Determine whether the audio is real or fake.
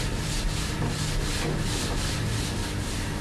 real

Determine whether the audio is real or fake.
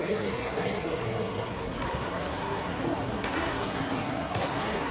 fake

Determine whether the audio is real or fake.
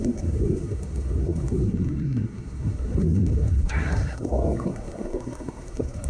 fake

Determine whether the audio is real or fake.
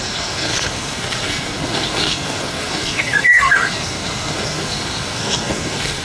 fake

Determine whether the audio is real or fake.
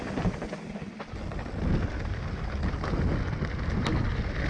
real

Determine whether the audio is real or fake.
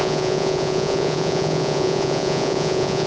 fake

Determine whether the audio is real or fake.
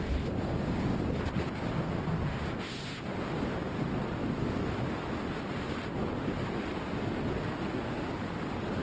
real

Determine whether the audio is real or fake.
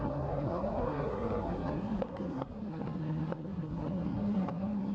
fake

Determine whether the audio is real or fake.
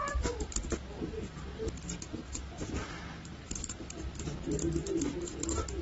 real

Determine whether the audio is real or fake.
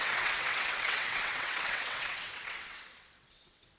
fake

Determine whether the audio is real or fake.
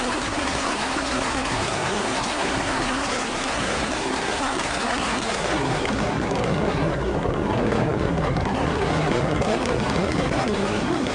fake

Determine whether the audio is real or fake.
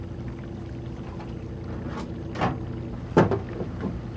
real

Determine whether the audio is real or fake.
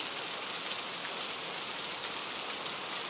real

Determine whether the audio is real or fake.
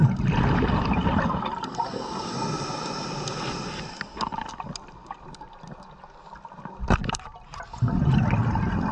real